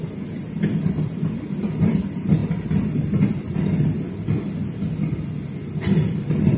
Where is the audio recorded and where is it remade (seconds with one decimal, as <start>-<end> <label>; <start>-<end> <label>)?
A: 0.0-6.6 recorded